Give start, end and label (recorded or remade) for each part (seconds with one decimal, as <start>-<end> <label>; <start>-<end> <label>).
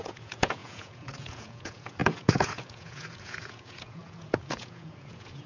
0.0-5.5 remade